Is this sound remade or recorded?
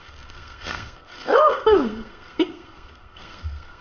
remade